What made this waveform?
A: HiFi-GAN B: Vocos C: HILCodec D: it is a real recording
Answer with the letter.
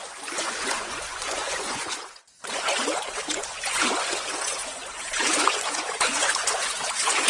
B